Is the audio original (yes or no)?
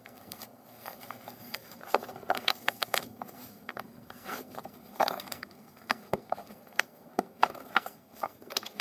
no